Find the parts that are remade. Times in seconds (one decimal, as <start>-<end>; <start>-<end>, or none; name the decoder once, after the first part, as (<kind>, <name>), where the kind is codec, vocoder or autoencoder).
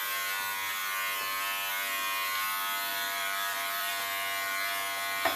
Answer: 2.9-3.9 (vocoder, BigVGAN v2)